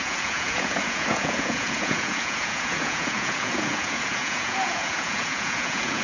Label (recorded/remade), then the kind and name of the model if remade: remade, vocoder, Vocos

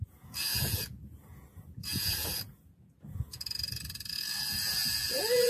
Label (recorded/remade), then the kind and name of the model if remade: remade, vocoder, Vocos